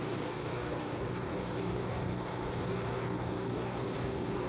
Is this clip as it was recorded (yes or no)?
no